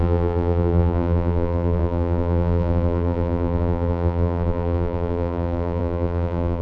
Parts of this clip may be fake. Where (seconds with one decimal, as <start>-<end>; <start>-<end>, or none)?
0.0-6.6